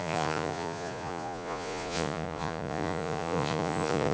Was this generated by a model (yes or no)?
yes